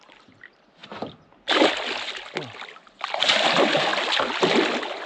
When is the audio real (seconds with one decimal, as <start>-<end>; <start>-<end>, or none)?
0.0-5.1